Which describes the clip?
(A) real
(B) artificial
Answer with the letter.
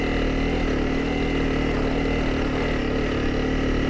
A